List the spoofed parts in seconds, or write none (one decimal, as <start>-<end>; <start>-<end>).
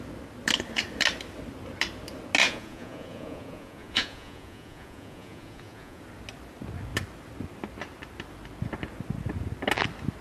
2.4-6.0